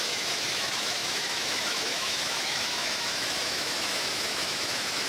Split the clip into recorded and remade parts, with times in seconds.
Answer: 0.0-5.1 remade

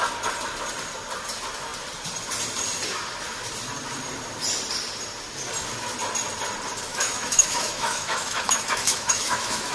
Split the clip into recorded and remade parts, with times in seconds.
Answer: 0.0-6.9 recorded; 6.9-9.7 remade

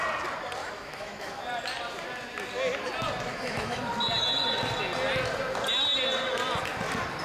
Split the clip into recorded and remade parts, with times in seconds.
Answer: 0.0-0.6 recorded; 0.6-1.4 remade; 1.4-3.3 recorded; 3.3-3.8 remade; 3.8-7.2 recorded

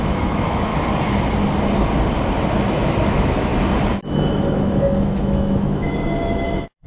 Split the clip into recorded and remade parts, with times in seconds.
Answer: 0.0-0.7 remade; 0.7-2.5 recorded; 2.5-3.5 remade; 3.5-4.3 recorded; 4.3-6.9 remade